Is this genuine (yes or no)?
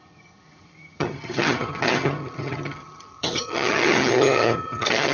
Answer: no